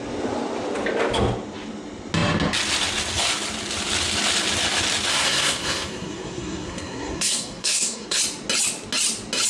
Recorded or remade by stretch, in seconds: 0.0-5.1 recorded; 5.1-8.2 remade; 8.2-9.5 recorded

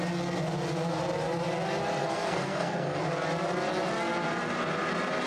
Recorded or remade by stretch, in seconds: 0.0-2.0 recorded; 2.0-3.0 remade; 3.0-5.3 recorded

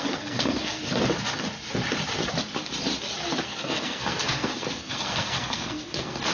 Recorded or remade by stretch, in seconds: 0.0-0.8 remade; 0.8-3.4 recorded; 3.4-6.3 remade

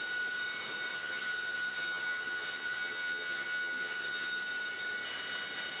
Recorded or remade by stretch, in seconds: 0.0-0.9 recorded; 0.9-4.4 remade; 4.4-5.8 recorded

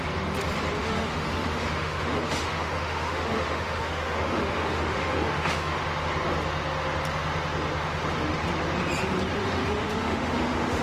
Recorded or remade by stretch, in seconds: 0.0-0.8 recorded; 0.8-5.8 remade; 5.8-9.4 recorded; 9.4-10.8 remade

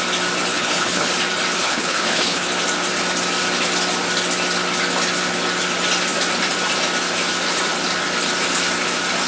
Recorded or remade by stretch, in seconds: 0.0-0.5 recorded; 0.5-1.1 remade; 1.1-1.6 recorded; 1.6-2.5 remade; 2.5-9.3 recorded

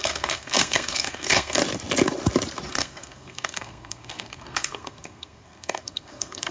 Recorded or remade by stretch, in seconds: 0.0-1.6 remade; 1.6-2.7 recorded; 2.7-6.5 remade